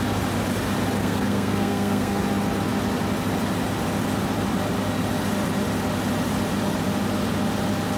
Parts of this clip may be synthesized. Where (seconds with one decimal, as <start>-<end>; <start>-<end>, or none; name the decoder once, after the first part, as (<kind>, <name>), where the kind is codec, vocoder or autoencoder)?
1.0-2.2 (codec, SNAC)